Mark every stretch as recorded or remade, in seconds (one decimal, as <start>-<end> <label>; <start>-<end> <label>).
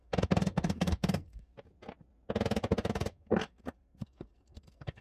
0.0-1.5 remade; 1.5-2.9 recorded; 2.9-5.0 remade